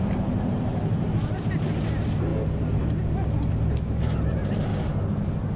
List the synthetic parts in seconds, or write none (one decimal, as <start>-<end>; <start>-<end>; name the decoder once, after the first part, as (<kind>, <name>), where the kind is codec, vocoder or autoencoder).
0.0-2.3 (vocoder, BigVGAN v2); 3.5-4.7